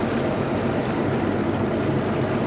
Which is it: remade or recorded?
recorded